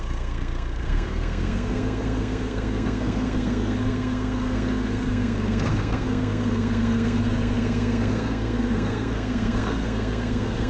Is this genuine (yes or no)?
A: no